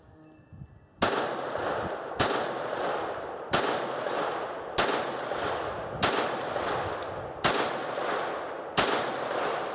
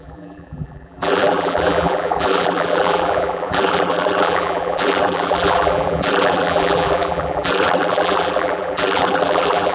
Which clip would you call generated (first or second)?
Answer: second